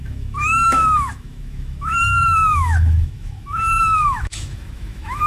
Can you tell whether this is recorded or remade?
remade